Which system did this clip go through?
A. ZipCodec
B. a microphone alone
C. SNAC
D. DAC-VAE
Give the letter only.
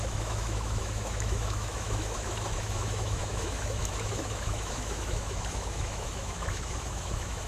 D